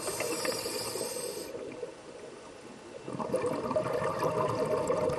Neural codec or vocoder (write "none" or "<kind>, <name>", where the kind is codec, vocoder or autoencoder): none